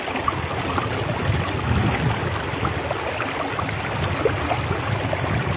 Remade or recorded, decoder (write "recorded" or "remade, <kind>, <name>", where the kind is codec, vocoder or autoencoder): recorded